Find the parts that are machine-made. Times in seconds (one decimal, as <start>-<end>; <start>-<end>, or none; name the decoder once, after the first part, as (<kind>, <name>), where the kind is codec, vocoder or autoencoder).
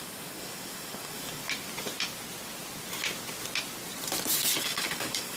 0.0-1.4 (codec, DAC); 4.6-5.4